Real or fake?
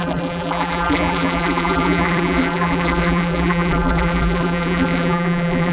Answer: fake